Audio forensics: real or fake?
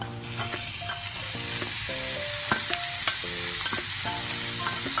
real